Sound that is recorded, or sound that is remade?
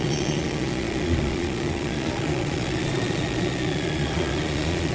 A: remade